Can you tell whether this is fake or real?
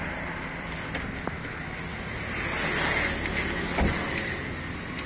real